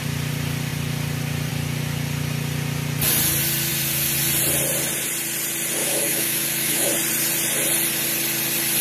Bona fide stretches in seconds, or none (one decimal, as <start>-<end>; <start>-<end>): 0.0-5.8; 6.9-8.8